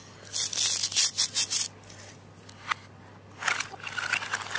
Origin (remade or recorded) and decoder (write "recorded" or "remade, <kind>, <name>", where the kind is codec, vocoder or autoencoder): recorded